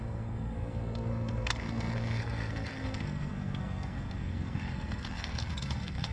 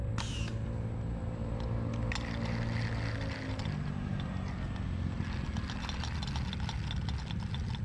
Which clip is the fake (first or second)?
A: first